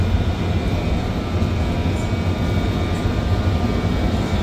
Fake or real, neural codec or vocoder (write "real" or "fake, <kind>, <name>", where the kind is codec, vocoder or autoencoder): real